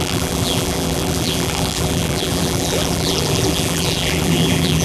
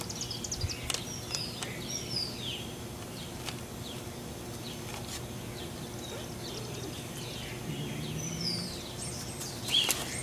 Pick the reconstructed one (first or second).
first